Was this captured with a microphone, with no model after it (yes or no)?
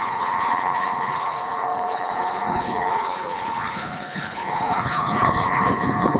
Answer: no